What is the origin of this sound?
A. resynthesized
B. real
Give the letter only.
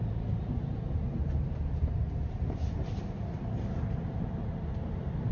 B